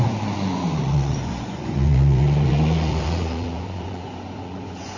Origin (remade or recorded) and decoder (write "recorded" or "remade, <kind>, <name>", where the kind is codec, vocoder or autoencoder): remade, vocoder, Vocos